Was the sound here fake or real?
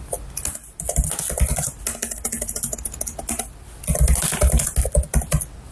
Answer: real